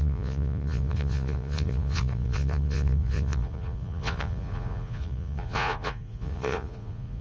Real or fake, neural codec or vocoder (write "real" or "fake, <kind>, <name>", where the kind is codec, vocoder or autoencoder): fake, vocoder, Vocos